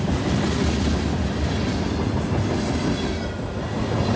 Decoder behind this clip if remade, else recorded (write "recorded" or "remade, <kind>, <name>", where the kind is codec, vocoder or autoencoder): recorded